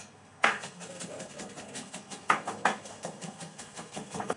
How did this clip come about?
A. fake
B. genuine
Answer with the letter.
A